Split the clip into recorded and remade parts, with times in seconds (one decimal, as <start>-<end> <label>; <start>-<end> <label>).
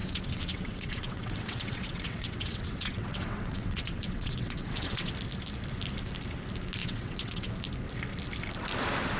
0.0-5.1 remade; 5.1-6.8 recorded; 6.8-7.5 remade; 7.5-9.2 recorded